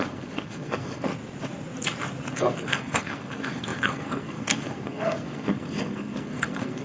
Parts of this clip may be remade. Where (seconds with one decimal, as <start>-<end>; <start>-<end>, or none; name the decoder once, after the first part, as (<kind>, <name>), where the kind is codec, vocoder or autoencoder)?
0.0-1.1 (codec, SNAC); 2.3-6.8